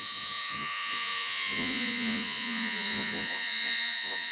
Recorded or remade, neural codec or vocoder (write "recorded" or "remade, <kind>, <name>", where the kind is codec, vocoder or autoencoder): remade, vocoder, Vocos